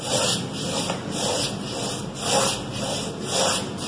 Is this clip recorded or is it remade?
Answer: recorded